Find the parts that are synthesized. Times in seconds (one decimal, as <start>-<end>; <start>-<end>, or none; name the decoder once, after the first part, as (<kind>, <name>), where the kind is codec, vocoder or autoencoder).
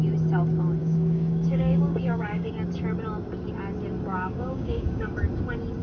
0.8-2.5 (codec, DAC); 4.1-5.1